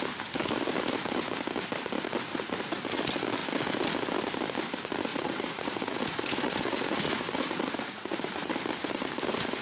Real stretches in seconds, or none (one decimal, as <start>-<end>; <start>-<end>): 0.0-2.3; 3.0-5.1; 8.5-9.6